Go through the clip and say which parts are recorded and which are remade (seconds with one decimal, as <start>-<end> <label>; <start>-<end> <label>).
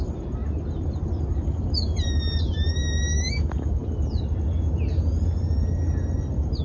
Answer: 0.0-6.6 recorded